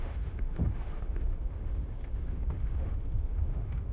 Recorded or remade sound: remade